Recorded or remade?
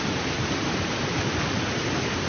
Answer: recorded